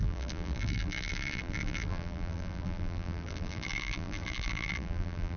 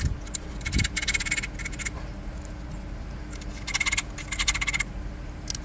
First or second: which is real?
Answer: second